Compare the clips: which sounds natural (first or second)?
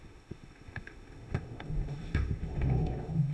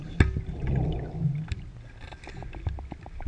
second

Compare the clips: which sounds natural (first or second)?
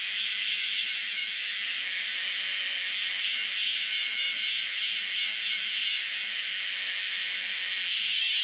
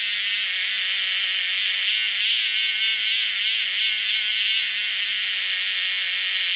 second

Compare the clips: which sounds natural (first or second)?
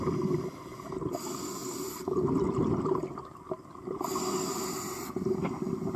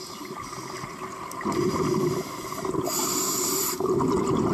first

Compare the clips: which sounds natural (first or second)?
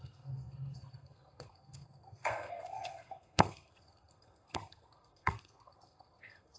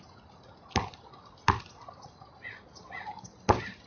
second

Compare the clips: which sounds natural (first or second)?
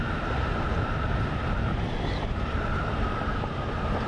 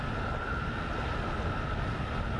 second